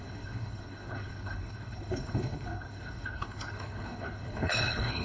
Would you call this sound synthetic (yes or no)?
yes